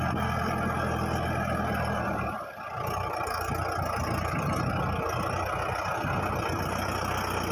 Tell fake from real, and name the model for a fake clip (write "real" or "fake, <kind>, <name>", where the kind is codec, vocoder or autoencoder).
real